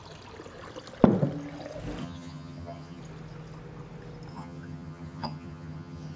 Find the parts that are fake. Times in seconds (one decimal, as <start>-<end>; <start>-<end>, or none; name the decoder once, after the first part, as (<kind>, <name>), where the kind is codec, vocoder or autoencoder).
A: 2.0-3.0 (vocoder, HiFi-GAN); 4.3-6.2